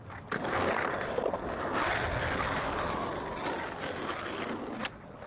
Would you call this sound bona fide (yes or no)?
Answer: yes